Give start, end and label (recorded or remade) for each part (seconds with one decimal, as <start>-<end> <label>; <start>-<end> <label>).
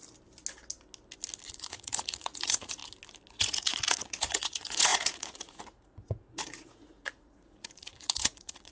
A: 0.0-1.5 recorded; 1.5-2.8 remade; 2.8-3.3 recorded; 3.3-8.7 remade